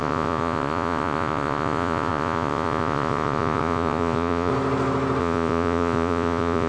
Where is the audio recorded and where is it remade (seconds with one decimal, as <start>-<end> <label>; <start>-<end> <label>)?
0.0-4.5 remade; 4.5-5.2 recorded; 5.2-6.7 remade